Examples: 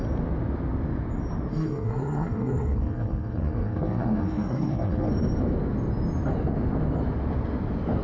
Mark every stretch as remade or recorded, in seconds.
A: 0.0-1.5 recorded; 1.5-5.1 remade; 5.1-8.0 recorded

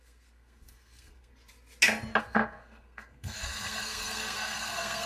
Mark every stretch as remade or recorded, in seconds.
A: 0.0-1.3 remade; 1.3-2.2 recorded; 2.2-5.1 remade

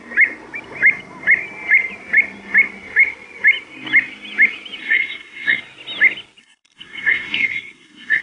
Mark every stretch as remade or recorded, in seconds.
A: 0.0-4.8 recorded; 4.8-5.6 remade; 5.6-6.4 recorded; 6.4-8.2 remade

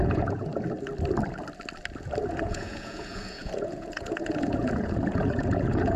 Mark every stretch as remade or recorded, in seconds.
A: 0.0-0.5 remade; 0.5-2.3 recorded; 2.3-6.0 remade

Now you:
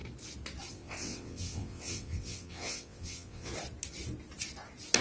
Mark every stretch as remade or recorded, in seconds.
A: 0.0-0.7 recorded; 0.7-3.5 remade; 3.5-5.0 recorded